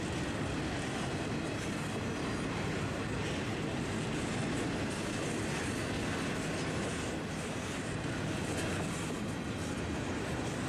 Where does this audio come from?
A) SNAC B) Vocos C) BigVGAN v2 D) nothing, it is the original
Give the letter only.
D